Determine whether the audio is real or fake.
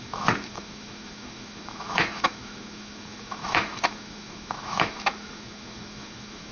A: fake